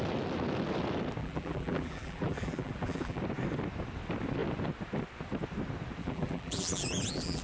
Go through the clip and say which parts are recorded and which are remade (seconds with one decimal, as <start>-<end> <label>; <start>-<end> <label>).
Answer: 0.0-1.2 recorded; 1.2-3.2 remade; 3.2-6.0 recorded; 6.0-7.4 remade